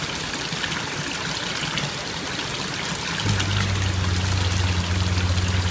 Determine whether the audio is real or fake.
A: real